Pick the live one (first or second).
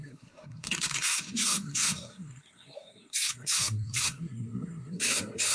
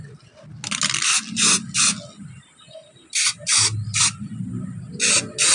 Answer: second